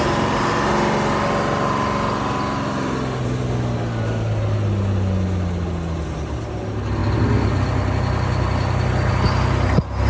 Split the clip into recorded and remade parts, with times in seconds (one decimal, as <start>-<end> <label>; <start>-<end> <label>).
0.0-10.1 recorded